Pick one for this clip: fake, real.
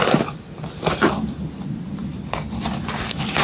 real